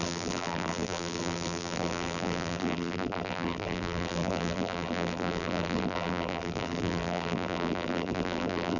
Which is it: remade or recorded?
remade